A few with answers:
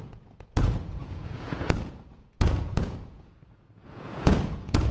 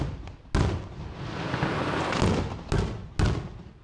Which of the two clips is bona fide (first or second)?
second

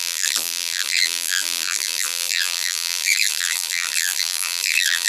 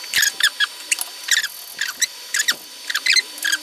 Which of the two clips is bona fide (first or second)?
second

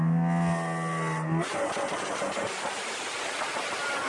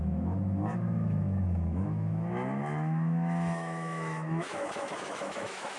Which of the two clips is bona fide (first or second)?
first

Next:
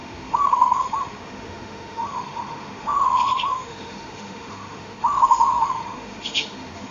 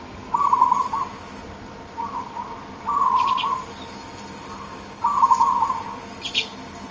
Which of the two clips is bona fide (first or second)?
second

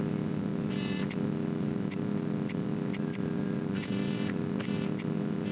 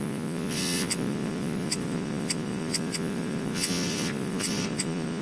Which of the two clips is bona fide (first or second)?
first